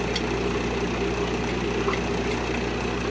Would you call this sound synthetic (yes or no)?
no